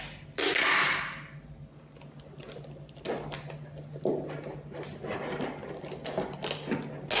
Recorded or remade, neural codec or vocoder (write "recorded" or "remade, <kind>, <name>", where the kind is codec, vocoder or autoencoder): recorded